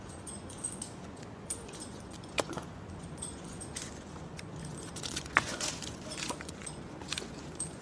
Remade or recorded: remade